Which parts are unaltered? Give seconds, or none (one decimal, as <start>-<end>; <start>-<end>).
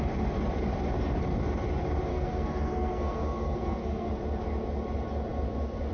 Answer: 0.0-2.1; 4.1-5.9